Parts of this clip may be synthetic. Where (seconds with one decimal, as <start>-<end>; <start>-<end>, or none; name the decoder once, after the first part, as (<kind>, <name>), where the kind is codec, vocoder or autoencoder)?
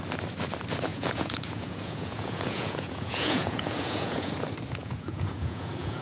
0.9-4.3 (vocoder, Vocos); 4.8-6.0